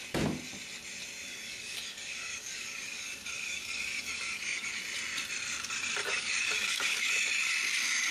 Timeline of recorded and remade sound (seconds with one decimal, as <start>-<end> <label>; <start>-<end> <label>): 0.0-1.3 recorded; 1.3-4.8 remade; 4.8-6.0 recorded; 6.0-7.1 remade; 7.1-8.1 recorded